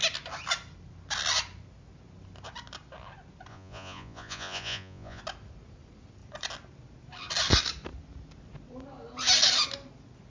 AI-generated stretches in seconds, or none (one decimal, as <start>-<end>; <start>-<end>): 3.5-5.2